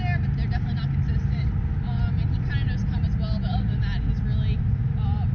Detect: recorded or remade recorded